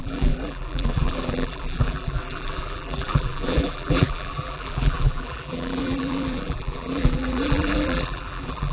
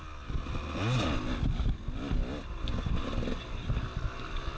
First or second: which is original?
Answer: second